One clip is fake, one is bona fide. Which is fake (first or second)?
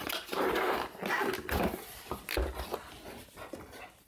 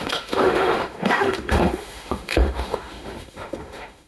second